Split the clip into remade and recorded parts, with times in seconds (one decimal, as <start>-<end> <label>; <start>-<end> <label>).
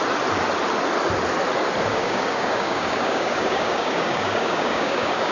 0.0-1.9 recorded; 1.9-5.3 remade